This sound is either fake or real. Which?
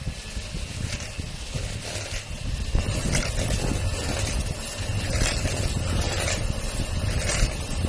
real